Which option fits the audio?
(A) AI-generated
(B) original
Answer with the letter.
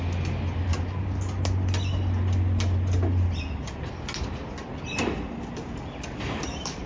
B